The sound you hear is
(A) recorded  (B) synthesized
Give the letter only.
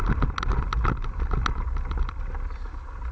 A